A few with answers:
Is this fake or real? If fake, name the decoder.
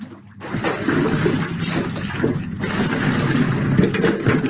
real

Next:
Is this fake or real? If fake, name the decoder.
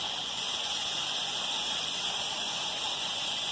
fake, vocoder, Vocos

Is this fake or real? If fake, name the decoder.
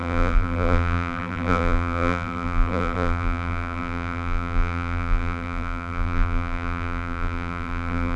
fake, vocoder, BigVGAN v2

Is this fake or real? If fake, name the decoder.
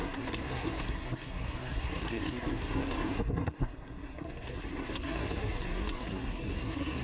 fake, codec, SNAC